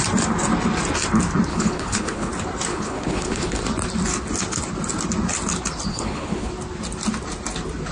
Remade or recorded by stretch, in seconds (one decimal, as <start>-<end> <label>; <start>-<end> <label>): 0.0-1.5 recorded; 1.5-2.3 remade; 2.3-2.7 recorded; 2.7-3.6 remade; 3.6-5.9 recorded; 5.9-6.5 remade; 6.5-7.9 recorded